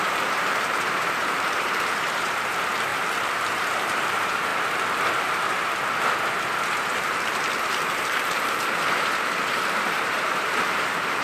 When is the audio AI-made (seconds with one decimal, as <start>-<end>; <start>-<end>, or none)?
0.0-2.9; 3.4-4.5; 6.6-11.2